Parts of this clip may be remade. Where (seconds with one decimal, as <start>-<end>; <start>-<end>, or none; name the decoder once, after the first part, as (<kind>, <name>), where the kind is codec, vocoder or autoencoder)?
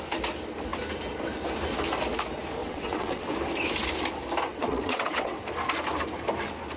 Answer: 2.6-3.3 (vocoder, WaveNeXt); 4.5-5.4